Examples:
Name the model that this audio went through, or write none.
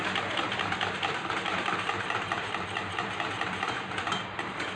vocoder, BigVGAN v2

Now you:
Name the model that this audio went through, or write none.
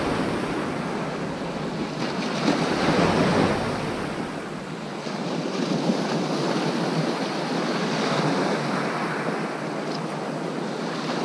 none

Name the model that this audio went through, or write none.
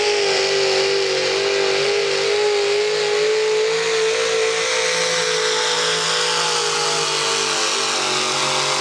none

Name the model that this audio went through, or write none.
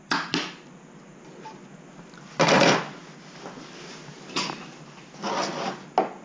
none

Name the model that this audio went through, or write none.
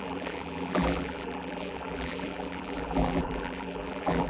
vocoder, BigVGAN v2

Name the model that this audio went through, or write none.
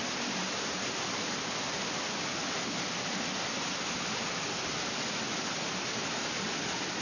none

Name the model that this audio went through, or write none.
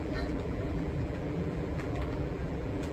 vocoder, BigVGAN v2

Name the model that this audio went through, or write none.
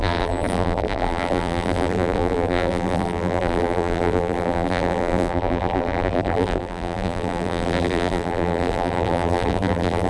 vocoder, BigVGAN v2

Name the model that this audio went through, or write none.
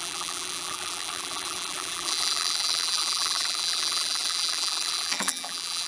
vocoder, BigVGAN v2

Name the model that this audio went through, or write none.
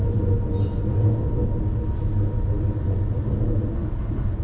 none